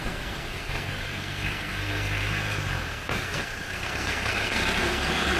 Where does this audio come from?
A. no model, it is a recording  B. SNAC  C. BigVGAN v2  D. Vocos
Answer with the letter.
B